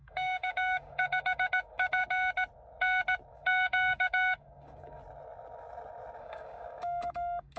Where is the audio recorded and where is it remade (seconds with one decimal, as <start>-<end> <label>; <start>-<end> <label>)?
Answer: 0.0-2.0 remade; 2.0-3.3 recorded; 3.3-5.0 remade; 5.0-6.2 recorded; 6.2-7.6 remade